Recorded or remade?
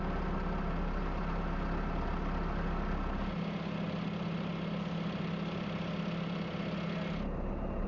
recorded